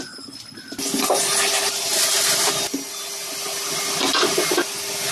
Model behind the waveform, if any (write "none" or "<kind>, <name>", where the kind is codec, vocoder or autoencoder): none